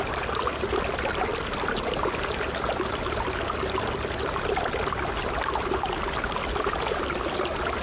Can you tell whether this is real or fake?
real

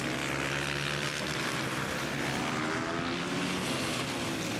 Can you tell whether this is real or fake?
real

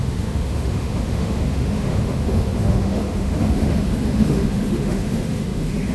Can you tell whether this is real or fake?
fake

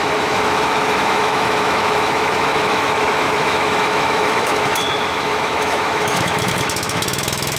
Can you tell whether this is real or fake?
fake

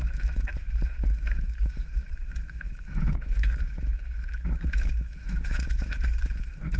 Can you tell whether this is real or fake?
fake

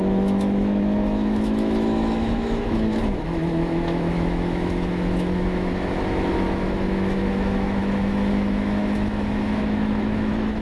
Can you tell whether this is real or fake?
fake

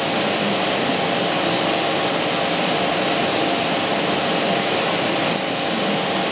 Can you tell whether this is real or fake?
real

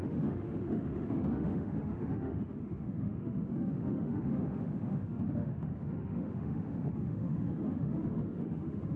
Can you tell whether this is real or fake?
fake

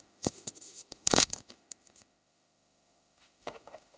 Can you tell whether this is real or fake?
fake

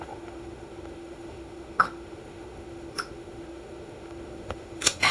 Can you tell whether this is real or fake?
fake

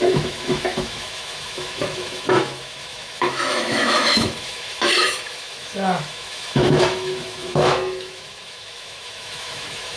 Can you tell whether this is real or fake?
fake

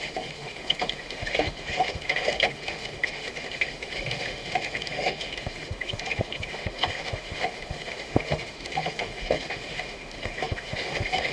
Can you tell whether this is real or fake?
fake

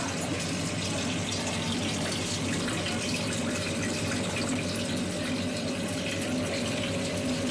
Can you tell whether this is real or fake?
real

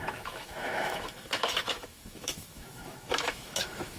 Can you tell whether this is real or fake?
fake